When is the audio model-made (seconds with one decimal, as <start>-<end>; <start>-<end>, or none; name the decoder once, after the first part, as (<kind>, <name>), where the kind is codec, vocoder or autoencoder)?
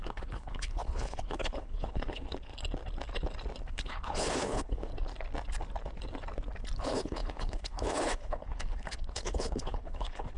0.0-2.5 (codec, HILCodec); 3.7-4.9; 6.8-10.4